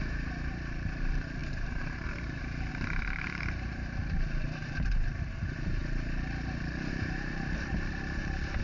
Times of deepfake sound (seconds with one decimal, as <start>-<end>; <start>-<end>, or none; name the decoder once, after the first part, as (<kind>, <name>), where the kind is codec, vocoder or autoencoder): 0.0-5.8 (vocoder, BigVGAN v2); 6.9-8.6